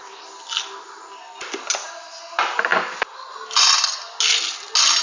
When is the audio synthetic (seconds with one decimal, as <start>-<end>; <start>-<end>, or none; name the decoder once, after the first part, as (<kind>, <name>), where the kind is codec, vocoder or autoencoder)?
none